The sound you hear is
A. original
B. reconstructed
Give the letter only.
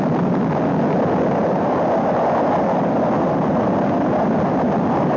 A